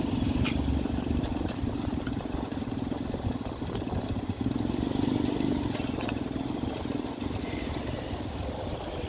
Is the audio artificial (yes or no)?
no